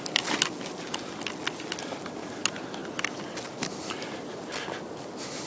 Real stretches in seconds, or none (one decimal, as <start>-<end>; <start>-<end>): 0.0-5.5